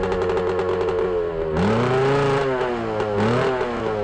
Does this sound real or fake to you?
real